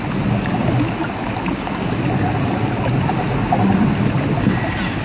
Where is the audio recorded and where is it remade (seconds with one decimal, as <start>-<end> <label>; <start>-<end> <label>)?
0.0-5.0 recorded